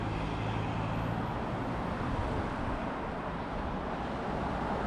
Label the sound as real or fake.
real